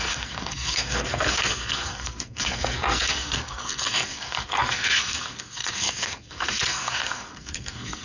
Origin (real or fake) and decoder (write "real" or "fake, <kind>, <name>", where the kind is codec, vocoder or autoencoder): fake, codec, SNAC